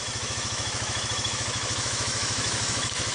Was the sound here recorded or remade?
remade